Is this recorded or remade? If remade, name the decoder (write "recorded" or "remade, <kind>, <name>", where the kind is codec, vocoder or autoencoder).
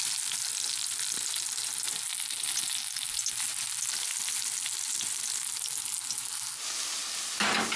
recorded